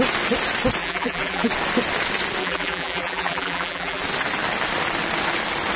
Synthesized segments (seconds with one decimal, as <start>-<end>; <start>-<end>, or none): 0.8-1.5; 2.4-4.0